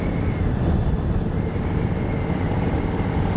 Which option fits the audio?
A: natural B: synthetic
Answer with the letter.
A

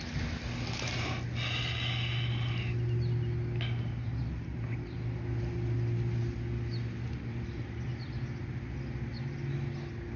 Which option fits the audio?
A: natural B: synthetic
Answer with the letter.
A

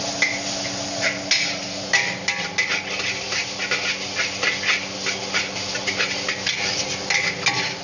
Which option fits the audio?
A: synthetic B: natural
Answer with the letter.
B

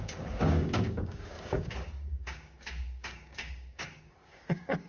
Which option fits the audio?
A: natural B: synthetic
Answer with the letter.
B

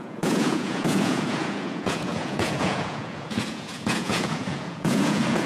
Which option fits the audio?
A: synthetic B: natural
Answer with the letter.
A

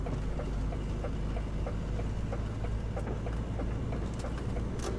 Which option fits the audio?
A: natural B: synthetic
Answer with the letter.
A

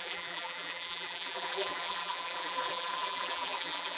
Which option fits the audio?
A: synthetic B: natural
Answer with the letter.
A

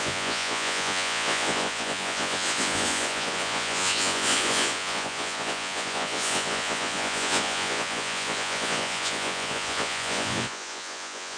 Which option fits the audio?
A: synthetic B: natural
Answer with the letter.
A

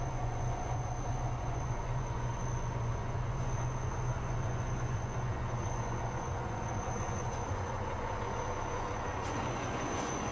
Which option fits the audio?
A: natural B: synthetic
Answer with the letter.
B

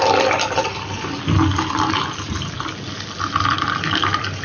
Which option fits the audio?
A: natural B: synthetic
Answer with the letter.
A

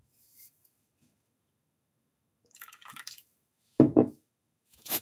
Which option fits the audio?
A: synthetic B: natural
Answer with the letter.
A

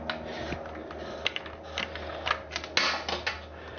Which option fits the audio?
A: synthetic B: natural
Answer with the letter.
B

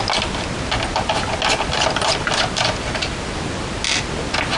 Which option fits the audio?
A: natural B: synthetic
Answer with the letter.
A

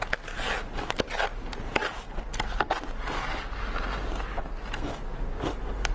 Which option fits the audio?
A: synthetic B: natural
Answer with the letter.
B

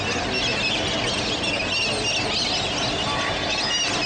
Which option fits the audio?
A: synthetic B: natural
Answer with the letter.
B